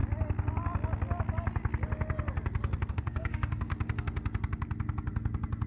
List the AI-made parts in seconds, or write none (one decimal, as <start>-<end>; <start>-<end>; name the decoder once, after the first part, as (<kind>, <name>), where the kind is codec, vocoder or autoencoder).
2.9-3.7 (codec, SNAC)